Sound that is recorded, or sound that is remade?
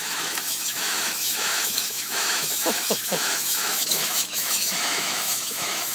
remade